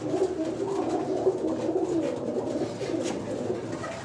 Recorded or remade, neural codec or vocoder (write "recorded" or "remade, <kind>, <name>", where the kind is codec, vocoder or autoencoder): recorded